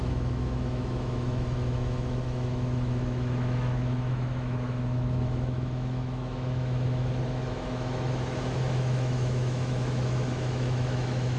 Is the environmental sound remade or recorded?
remade